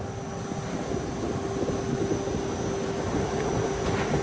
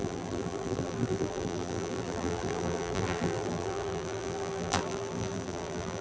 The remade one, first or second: second